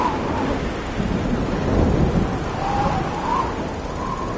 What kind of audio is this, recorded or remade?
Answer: recorded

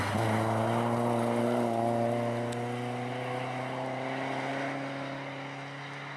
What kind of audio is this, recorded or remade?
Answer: recorded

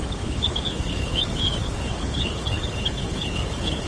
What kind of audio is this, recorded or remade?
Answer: remade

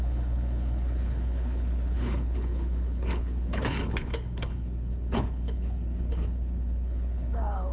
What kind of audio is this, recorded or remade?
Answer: remade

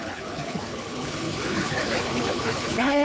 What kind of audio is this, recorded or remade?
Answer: remade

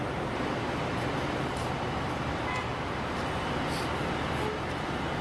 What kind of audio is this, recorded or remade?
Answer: recorded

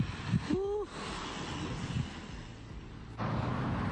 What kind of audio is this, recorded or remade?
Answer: recorded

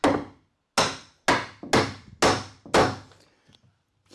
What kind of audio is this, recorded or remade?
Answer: recorded